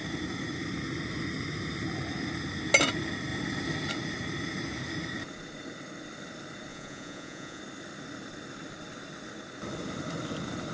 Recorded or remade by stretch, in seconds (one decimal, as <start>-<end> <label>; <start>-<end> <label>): 0.0-6.7 recorded; 6.7-7.6 remade; 7.6-10.7 recorded